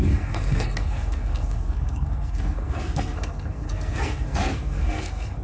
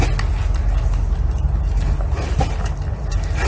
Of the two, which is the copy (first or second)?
first